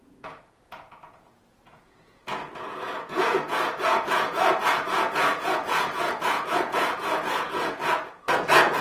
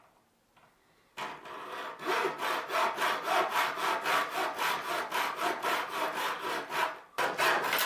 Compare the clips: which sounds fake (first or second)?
first